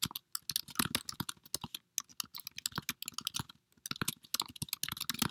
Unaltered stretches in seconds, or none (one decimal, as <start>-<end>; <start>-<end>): 0.0-5.3